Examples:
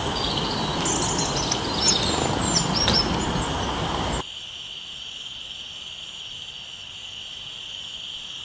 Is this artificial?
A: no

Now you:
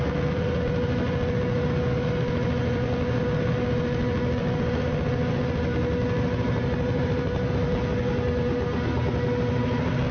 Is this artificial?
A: no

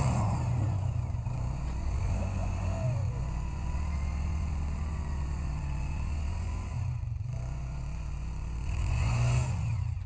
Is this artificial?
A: yes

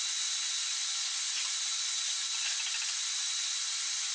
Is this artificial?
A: no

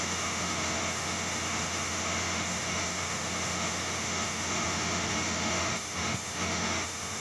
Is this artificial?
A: yes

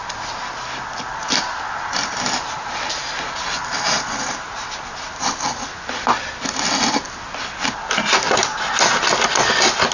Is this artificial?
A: no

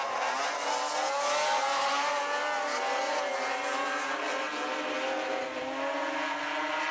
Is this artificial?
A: no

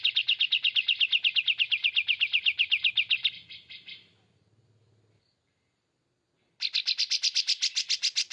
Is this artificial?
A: no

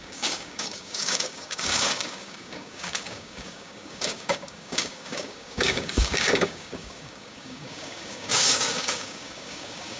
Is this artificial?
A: yes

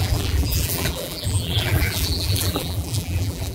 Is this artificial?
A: yes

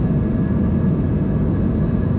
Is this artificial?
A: no